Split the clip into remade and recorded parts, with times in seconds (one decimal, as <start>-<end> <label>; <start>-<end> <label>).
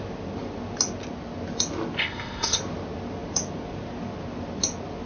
0.0-2.0 recorded; 2.0-2.6 remade; 2.6-5.1 recorded